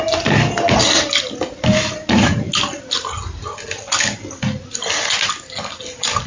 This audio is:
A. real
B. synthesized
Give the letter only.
A